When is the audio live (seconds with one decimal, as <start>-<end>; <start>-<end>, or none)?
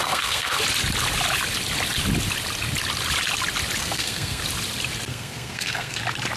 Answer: 0.6-3.8; 4.4-5.1; 6.0-6.4